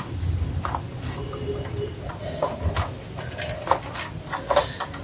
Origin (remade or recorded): recorded